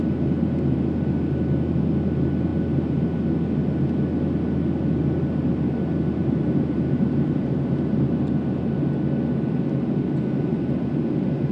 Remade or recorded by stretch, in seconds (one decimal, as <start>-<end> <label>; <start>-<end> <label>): 0.0-6.2 recorded; 6.2-8.1 remade; 8.1-11.5 recorded